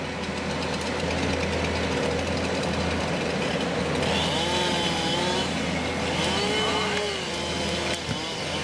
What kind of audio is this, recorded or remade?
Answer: recorded